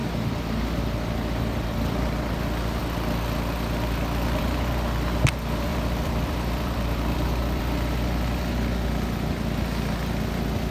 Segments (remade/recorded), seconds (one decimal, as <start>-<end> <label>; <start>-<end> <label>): 0.0-5.7 recorded; 5.7-7.6 remade; 7.6-10.7 recorded